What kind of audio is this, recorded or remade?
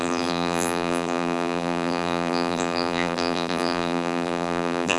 remade